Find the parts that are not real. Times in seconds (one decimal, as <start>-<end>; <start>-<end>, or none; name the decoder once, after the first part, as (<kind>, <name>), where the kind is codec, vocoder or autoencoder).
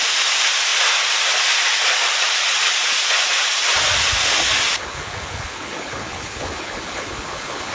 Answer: 4.8-7.7 (codec, HILCodec)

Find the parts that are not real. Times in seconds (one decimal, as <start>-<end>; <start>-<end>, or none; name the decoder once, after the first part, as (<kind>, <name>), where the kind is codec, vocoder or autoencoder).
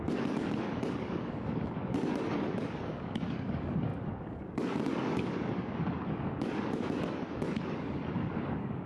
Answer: 0.0-8.9 (codec, DAC)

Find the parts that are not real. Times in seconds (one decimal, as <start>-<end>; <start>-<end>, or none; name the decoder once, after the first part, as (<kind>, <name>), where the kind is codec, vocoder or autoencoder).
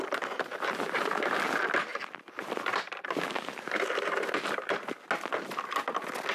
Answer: 0.5-1.3 (vocoder, BigVGAN v2); 1.9-4.8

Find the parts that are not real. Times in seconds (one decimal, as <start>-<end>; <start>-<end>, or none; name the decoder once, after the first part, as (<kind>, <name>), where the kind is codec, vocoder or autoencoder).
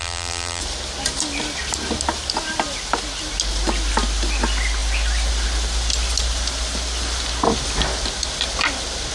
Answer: 0.0-0.6 (vocoder, BigVGAN v2)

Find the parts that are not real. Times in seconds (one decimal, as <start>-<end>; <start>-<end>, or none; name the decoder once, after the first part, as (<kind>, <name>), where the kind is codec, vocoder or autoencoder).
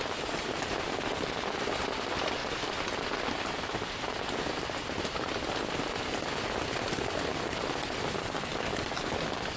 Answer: 0.0-4.8 (vocoder, BigVGAN v2); 7.5-9.6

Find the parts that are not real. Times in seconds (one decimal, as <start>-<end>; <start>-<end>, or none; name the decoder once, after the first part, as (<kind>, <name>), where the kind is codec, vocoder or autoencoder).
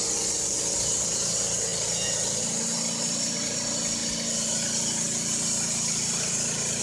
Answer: 0.0-0.6 (vocoder, Vocos)